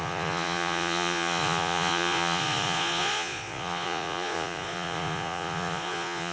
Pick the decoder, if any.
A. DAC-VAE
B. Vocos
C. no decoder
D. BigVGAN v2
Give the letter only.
B